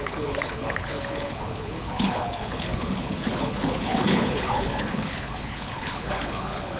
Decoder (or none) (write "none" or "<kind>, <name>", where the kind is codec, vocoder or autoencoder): codec, HILCodec